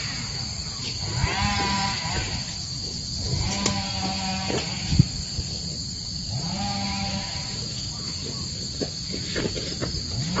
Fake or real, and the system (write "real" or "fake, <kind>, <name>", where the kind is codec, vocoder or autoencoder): real